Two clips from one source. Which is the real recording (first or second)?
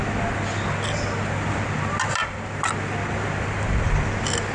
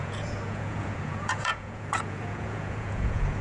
first